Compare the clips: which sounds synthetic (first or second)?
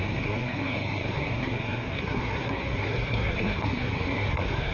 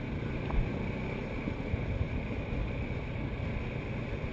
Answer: first